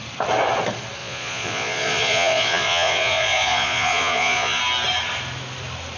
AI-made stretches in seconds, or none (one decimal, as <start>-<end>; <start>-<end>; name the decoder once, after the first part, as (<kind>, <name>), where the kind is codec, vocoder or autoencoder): 1.0-4.6 (vocoder, Vocos)